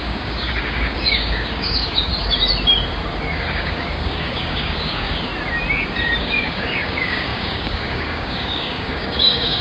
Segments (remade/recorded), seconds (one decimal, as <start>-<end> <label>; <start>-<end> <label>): 0.0-2.1 remade; 2.1-3.3 recorded; 3.3-5.3 remade; 5.3-6.2 recorded; 6.2-9.6 remade